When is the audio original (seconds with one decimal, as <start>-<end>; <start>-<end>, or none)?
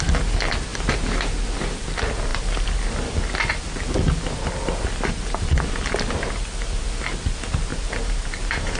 0.0-0.7; 1.4-7.7